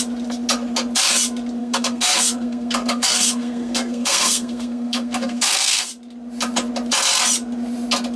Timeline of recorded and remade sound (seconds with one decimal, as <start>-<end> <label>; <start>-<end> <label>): 0.0-1.6 recorded; 1.6-5.9 remade; 5.9-8.2 recorded